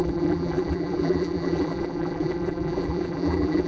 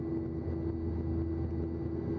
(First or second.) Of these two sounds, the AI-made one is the first